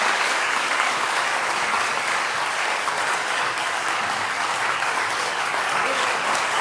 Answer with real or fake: fake